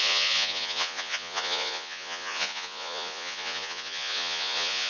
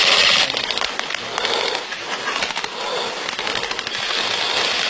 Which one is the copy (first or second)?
first